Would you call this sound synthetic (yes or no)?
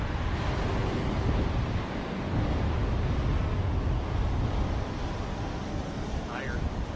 no